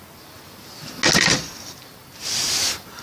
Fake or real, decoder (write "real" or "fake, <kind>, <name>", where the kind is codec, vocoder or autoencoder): real